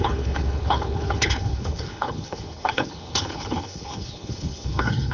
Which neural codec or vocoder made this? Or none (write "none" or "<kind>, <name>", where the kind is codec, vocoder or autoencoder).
codec, HILCodec